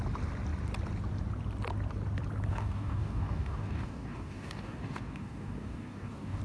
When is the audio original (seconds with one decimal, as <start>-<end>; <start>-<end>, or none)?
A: 0.0-2.5